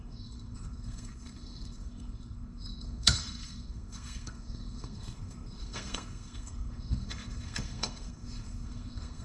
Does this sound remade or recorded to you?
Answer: remade